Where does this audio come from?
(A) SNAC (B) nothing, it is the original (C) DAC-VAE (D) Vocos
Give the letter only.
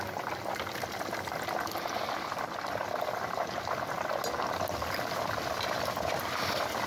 B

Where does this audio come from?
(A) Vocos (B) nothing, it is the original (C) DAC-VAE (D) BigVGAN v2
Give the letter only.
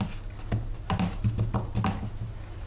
B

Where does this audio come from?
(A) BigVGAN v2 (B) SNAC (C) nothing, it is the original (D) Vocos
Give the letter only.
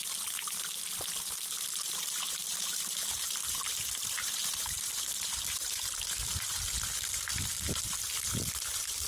C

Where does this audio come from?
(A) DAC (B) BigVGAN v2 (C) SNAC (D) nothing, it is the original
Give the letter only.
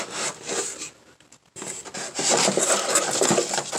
D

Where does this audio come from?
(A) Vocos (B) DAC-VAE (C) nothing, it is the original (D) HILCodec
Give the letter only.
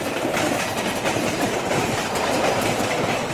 C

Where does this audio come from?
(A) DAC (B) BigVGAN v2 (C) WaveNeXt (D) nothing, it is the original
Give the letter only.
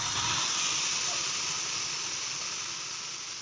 D